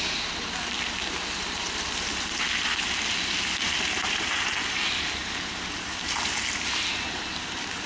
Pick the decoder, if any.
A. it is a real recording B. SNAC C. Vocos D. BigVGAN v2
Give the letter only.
A